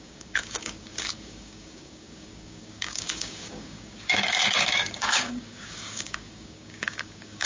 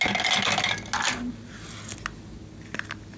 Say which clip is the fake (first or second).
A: first